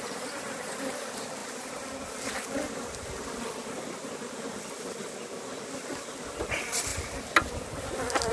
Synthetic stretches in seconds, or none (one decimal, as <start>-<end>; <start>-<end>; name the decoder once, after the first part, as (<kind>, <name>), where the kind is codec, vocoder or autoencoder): none